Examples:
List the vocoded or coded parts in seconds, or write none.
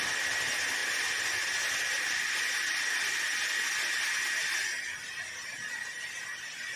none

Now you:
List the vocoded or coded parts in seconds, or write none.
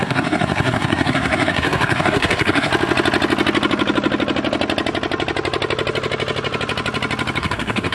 0.0-2.7; 7.4-7.9